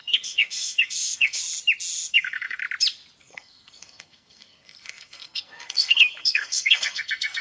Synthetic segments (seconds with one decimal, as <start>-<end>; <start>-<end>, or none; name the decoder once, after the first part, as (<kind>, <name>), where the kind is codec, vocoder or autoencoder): 0.0-1.4 (codec, SNAC); 2.1-2.6; 3.2-7.4

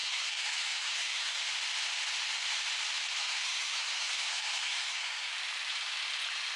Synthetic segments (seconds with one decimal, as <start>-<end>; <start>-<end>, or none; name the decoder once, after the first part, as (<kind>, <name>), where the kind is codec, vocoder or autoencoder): 0.0-1.4 (codec, SNAC); 3.2-5.3

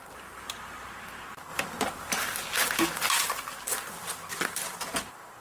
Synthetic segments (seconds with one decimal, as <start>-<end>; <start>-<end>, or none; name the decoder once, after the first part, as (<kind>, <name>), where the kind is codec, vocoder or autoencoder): none

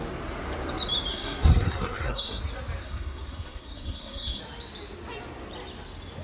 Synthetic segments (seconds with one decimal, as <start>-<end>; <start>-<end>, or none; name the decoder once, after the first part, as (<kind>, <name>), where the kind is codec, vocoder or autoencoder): 1.1-2.4 (codec, SNAC); 2.8-4.4

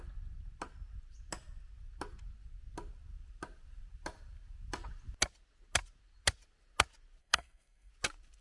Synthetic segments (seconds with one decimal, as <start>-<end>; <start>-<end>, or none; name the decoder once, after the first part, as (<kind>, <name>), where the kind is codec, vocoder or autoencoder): 7.2-7.9 (codec, SNAC)